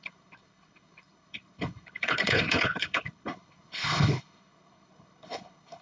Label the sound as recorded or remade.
remade